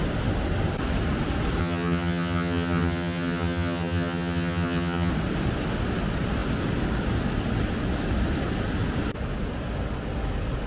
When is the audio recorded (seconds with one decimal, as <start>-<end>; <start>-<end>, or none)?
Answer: 0.0-1.6; 5.1-10.7